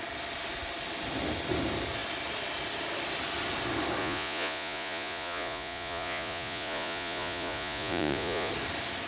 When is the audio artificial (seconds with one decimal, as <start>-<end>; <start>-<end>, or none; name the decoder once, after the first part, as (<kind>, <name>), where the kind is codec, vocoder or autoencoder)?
4.0-8.5 (vocoder, Vocos)